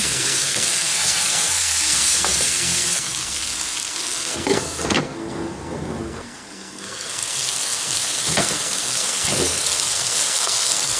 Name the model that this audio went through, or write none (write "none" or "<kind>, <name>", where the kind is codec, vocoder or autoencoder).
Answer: codec, SNAC